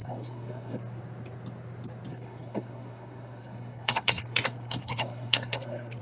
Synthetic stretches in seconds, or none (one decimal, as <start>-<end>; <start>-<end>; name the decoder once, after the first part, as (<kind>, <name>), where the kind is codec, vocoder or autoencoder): 0.0-0.8 (codec, SNAC); 2.1-6.0